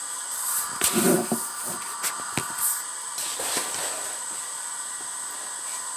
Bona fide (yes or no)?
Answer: yes